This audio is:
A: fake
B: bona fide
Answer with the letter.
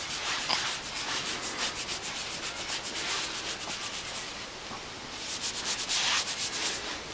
B